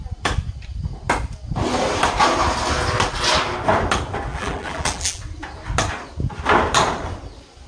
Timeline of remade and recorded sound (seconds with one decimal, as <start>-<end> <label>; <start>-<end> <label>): 0.0-4.3 recorded; 4.3-5.2 remade; 5.2-7.7 recorded